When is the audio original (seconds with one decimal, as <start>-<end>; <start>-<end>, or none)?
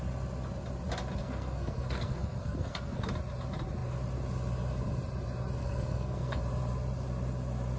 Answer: 0.0-1.2; 3.1-5.6; 6.4-7.8